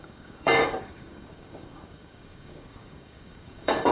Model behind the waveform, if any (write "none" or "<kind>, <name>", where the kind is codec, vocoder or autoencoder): codec, DAC